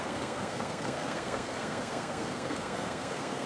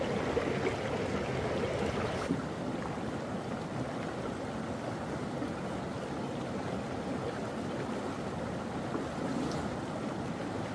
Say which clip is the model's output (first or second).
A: first